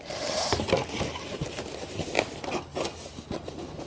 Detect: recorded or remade recorded